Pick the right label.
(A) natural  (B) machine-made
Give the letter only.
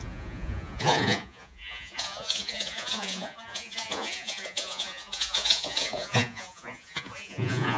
B